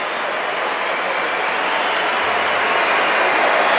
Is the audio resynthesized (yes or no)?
no